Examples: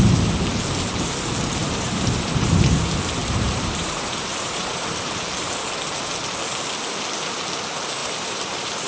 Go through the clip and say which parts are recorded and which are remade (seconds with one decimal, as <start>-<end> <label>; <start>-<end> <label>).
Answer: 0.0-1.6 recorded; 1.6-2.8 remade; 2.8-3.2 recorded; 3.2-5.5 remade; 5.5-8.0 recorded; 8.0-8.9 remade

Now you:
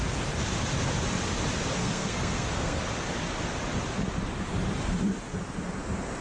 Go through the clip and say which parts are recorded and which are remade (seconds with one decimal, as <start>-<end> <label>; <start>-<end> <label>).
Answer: 0.0-1.8 recorded; 1.8-2.8 remade; 2.8-6.2 recorded

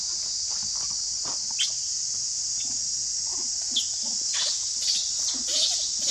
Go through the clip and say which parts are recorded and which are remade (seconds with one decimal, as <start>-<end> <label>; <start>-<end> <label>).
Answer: 0.0-6.1 recorded